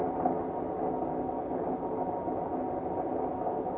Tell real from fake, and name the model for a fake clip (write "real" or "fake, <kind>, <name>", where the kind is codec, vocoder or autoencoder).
real